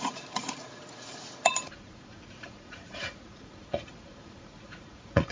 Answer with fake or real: fake